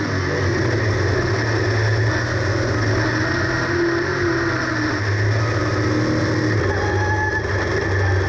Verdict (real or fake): real